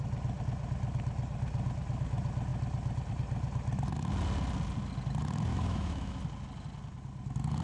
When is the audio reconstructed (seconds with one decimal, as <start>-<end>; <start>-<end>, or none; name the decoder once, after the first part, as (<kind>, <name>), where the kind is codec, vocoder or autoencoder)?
5.5-6.2 (autoencoder, DAC-VAE)